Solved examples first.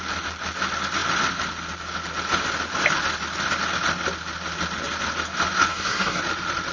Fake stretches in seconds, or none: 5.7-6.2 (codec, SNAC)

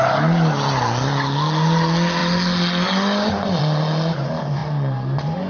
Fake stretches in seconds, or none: none

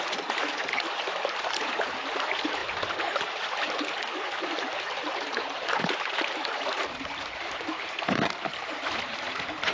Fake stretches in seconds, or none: none

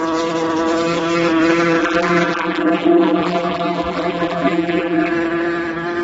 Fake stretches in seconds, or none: 1.8-5.1 (vocoder, BigVGAN v2)

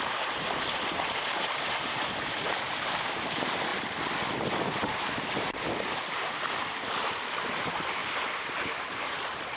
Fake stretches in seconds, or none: 0.0-3.7 (vocoder, BigVGAN v2); 4.8-8.0; 8.8-9.6